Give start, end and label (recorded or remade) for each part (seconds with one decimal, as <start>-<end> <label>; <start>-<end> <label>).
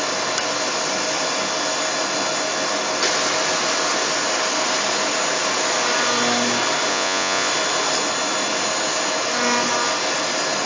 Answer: 0.0-6.9 recorded; 6.9-7.5 remade; 7.5-10.7 recorded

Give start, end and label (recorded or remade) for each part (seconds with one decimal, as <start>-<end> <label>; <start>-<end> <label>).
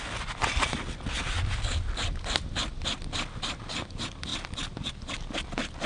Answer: 0.0-5.9 recorded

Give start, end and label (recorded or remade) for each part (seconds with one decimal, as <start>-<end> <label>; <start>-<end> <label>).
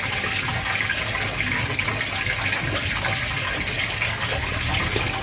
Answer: 0.0-5.2 recorded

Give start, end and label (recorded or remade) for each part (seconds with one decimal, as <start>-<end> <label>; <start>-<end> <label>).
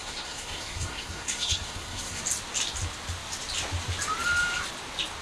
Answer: 0.0-2.2 remade; 2.2-5.2 recorded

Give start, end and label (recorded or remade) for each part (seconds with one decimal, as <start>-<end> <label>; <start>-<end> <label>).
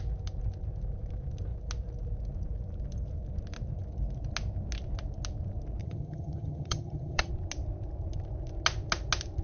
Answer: 0.0-5.8 recorded; 5.8-7.3 remade; 7.3-9.4 recorded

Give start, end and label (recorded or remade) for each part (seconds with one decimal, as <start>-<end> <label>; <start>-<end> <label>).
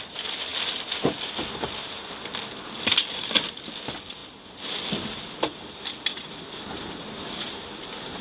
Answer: 0.0-8.2 recorded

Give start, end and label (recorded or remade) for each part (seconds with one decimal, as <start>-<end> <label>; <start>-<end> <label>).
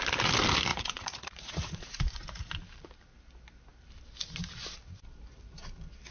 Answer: 0.0-0.7 recorded; 0.7-2.5 remade; 2.5-6.1 recorded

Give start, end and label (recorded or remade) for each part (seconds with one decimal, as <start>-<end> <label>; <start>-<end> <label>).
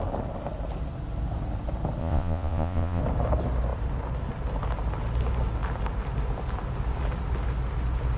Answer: 0.0-2.0 recorded; 2.0-3.0 remade; 3.0-8.2 recorded